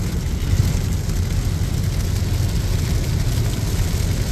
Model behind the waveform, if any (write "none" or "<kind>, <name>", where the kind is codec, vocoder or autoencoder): none